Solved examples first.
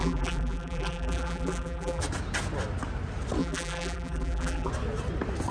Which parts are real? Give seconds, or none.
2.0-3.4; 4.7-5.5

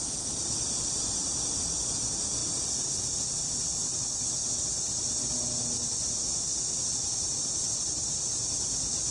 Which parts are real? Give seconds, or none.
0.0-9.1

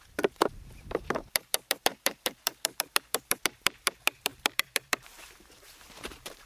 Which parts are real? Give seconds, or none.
none